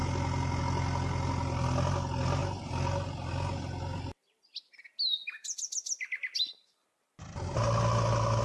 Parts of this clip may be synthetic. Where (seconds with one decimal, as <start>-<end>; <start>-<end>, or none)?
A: none